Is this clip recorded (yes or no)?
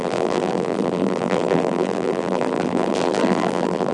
no